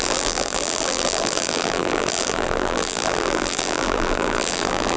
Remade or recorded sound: remade